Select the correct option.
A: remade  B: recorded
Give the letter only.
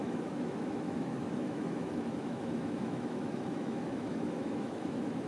A